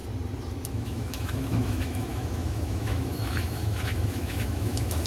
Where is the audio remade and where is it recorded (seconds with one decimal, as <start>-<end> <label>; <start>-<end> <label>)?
0.0-0.7 recorded; 0.7-5.1 remade